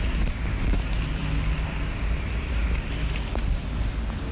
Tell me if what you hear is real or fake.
real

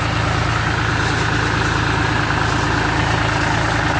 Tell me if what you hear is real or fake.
real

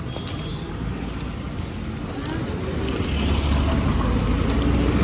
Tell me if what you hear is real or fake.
real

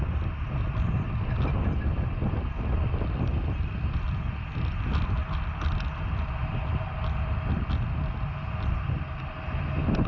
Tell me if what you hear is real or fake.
real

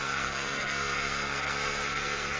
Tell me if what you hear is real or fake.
fake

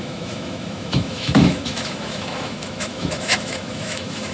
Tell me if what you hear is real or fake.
fake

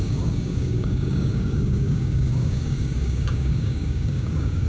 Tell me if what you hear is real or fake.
fake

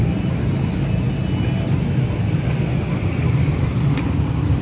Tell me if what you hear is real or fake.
real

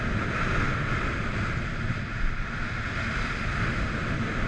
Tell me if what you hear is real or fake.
real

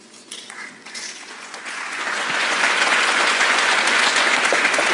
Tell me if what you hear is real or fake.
fake